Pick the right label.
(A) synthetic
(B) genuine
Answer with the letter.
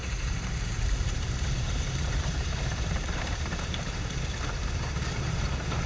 A